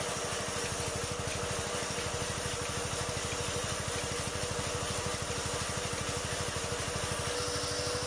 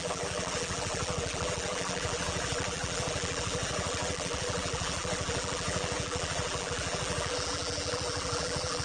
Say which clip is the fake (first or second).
second